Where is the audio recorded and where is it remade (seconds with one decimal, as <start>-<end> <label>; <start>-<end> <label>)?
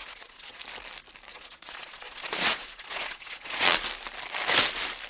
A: 0.0-0.6 remade; 0.6-1.3 recorded; 1.3-3.8 remade; 3.8-5.1 recorded